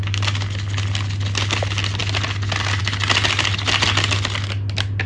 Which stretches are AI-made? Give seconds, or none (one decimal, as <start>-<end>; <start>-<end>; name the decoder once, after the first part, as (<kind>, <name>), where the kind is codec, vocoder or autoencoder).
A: none